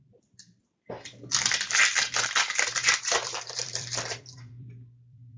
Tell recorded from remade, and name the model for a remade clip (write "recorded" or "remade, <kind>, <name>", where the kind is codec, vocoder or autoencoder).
remade, vocoder, BigVGAN v2